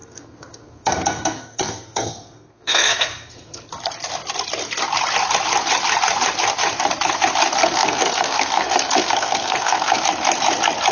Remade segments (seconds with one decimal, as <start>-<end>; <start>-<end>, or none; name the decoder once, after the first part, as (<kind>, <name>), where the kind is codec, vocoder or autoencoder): 0.0-3.6 (codec, SNAC); 7.6-10.0

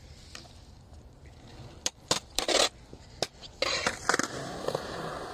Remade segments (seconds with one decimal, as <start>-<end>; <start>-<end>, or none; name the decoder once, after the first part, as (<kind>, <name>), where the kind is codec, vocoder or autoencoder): none

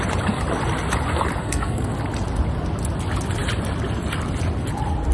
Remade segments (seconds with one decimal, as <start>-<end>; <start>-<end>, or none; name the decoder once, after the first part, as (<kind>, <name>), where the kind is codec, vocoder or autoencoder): 1.4-1.9 (codec, SNAC)

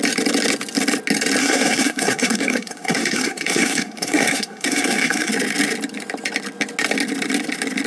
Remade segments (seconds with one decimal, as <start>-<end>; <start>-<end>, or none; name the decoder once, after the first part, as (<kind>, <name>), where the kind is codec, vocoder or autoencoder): 1.4-5.3 (codec, SNAC)

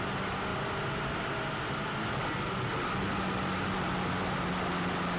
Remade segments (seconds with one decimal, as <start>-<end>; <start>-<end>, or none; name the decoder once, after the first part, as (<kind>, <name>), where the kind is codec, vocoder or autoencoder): none